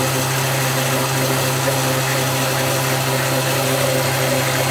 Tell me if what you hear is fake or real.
real